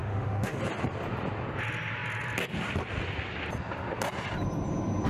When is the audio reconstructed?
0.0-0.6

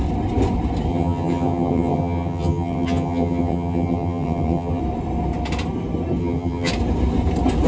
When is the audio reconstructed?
0.9-4.8; 6.2-6.7

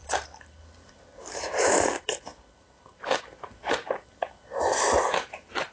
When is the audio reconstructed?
2.3-4.3

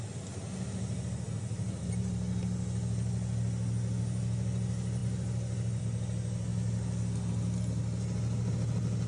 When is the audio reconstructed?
none

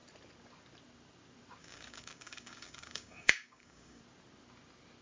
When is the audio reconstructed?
1.6-4.0

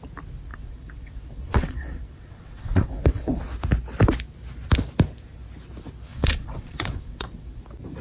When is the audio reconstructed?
0.5-3.4; 6.1-7.6

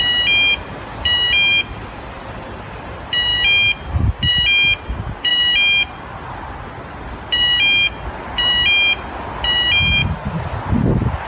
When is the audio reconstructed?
none

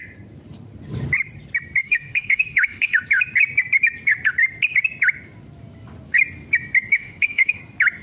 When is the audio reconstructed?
1.8-3.0; 6.9-7.6